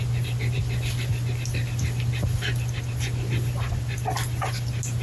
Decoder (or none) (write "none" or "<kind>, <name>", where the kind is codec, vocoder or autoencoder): none